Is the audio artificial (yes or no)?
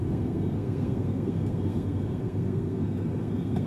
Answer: yes